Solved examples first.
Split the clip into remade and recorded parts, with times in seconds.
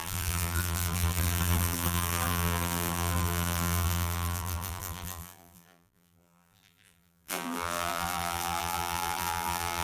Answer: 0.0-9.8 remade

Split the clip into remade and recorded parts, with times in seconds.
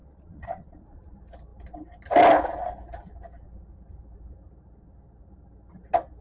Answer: 0.0-1.1 remade; 1.1-6.2 recorded